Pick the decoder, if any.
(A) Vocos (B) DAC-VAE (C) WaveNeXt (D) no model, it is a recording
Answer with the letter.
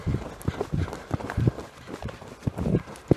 D